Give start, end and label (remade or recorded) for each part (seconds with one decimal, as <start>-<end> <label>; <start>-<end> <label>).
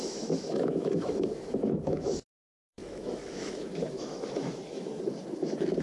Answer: 0.0-4.9 remade; 4.9-5.8 recorded